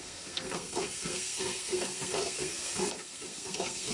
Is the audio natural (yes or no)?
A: no